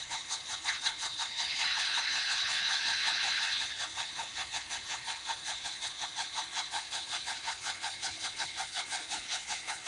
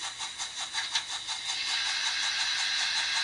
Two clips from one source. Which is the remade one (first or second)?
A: first